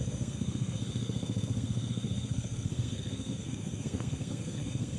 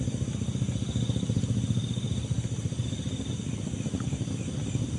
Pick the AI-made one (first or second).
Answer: first